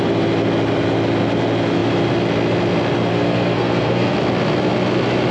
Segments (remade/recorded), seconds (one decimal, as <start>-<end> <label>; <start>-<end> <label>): 0.0-3.1 recorded; 3.1-4.1 remade; 4.1-5.3 recorded